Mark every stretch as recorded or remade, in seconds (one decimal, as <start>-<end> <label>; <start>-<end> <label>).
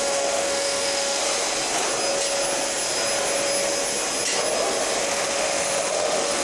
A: 0.0-1.2 remade; 1.2-5.0 recorded; 5.0-6.4 remade